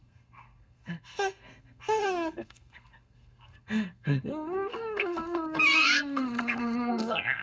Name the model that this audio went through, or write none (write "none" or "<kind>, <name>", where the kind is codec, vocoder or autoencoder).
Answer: codec, SNAC